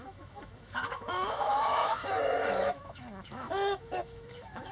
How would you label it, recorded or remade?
remade